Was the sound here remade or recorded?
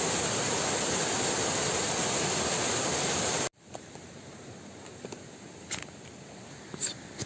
recorded